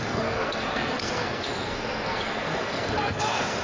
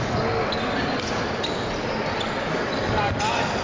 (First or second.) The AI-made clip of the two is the first